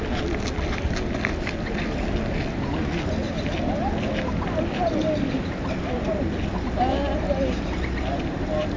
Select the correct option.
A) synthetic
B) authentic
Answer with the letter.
B